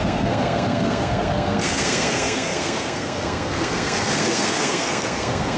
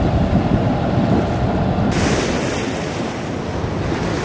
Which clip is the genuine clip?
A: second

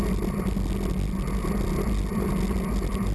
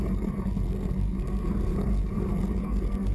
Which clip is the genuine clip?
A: first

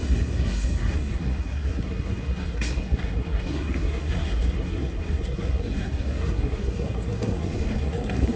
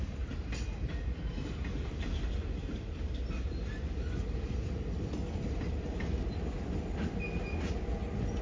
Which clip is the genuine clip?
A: second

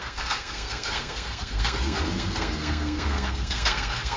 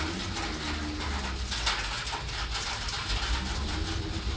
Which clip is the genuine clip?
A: second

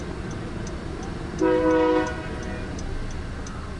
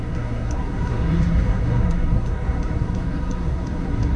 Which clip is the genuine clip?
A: first